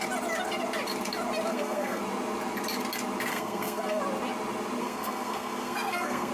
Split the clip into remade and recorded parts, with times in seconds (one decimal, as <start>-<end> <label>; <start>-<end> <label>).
0.0-1.5 recorded; 1.5-2.0 remade; 2.0-3.3 recorded; 3.3-4.0 remade; 4.0-4.8 recorded; 4.8-6.3 remade